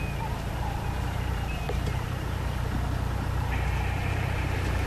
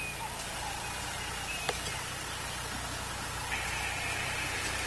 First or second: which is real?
second